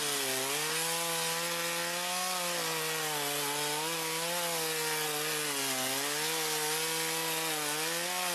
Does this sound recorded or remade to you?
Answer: recorded